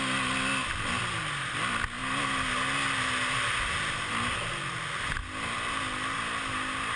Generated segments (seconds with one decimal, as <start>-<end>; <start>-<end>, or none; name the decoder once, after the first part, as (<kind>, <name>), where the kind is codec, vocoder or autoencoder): 0.6-1.2 (vocoder, BigVGAN v2)